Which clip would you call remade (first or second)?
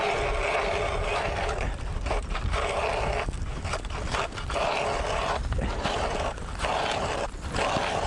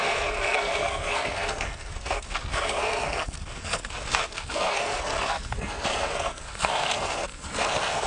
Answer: second